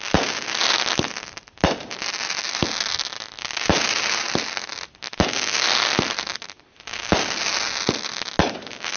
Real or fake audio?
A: real